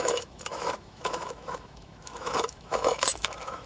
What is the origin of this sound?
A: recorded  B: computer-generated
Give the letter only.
B